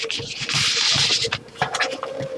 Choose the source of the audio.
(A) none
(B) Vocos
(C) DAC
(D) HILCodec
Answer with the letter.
A